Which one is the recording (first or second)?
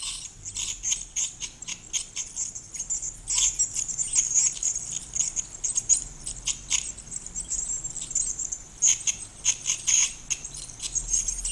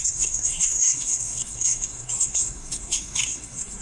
first